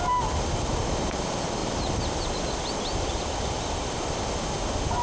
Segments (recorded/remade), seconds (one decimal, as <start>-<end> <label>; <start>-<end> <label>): 0.0-5.0 recorded